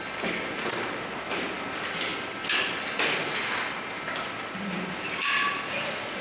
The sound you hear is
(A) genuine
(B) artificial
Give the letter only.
A